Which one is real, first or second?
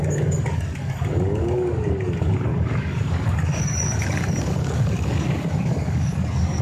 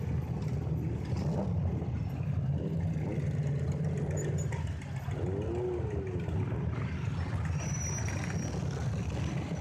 second